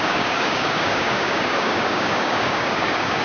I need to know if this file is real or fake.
fake